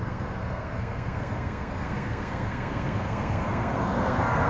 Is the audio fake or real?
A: fake